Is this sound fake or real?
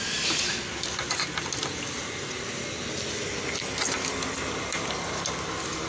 real